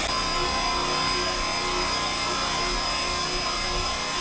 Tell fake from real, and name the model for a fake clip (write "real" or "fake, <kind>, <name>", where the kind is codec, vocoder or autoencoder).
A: real